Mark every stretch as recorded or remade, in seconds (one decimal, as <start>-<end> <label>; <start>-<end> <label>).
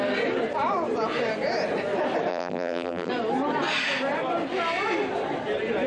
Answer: 0.0-2.3 recorded; 2.3-3.1 remade; 3.1-5.9 recorded